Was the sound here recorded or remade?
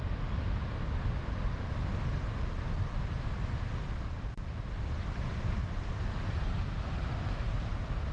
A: recorded